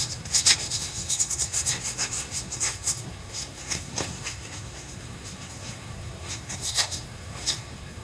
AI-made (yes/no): yes